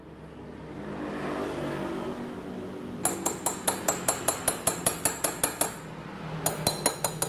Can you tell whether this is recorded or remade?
recorded